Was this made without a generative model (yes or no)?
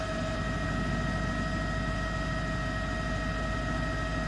yes